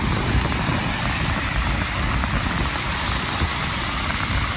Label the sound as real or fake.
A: real